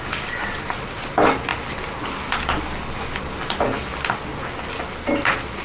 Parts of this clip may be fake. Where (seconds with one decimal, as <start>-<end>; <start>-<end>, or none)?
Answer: none